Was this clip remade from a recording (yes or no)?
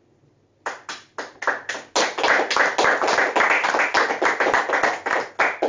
no